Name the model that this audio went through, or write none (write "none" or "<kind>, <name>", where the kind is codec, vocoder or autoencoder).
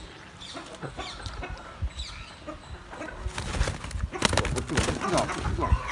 none